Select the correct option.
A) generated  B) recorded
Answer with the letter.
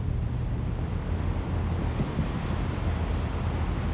B